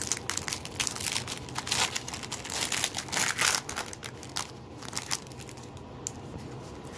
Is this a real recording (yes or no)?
yes